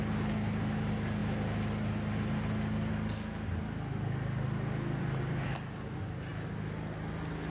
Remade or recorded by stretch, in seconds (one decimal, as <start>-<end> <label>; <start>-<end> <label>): 0.0-7.5 recorded